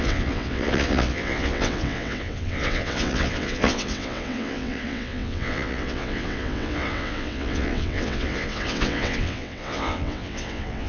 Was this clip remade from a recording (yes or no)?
yes